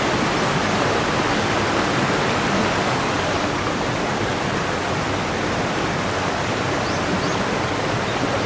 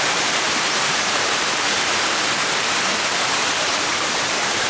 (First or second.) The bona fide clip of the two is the first